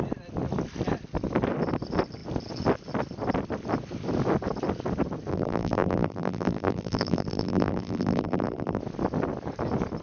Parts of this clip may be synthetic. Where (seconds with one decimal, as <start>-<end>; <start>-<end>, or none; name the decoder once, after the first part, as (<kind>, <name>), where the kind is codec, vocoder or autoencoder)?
5.3-8.8 (vocoder, BigVGAN v2)